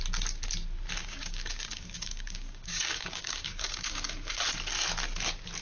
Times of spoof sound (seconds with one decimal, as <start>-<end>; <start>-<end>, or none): 1.0-4.4